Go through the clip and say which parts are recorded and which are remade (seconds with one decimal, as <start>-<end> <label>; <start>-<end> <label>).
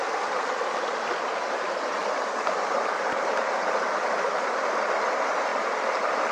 0.0-6.3 recorded